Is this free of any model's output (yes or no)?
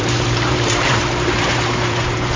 no